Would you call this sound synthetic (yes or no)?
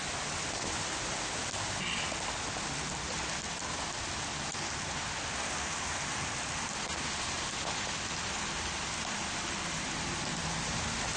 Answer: no